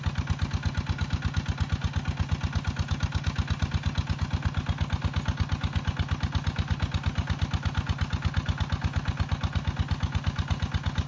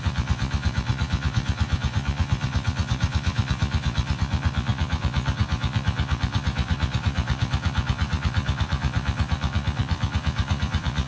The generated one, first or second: second